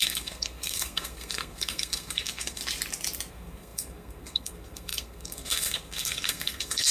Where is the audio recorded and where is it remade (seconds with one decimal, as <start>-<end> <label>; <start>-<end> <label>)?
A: 0.0-2.6 remade; 2.6-3.3 recorded; 3.3-6.9 remade